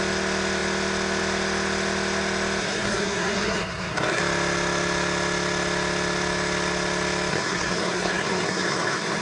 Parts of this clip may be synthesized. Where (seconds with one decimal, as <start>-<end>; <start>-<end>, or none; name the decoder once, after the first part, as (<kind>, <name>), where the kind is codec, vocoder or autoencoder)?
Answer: 2.6-4.2 (codec, SNAC); 7.3-9.2

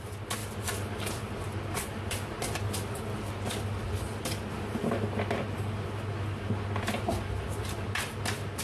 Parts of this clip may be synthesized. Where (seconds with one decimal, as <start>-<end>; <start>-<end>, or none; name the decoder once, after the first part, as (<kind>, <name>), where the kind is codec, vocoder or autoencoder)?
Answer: none